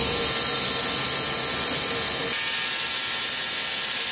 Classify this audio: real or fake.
real